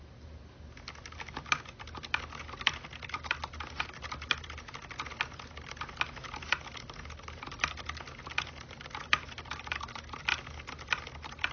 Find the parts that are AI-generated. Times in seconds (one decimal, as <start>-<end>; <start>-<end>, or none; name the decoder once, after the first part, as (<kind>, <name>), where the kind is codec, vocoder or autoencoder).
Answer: none